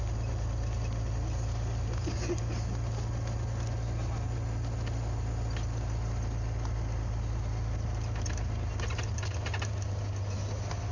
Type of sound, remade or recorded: recorded